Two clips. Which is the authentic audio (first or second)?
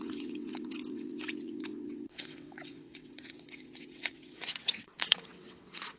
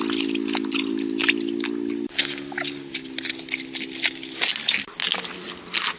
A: second